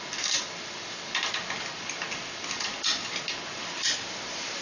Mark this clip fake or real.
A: real